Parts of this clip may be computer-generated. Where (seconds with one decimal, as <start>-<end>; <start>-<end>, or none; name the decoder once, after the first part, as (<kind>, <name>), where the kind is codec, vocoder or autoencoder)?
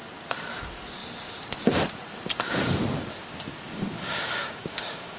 3.5-5.2 (codec, DAC)